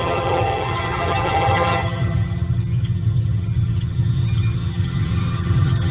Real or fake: fake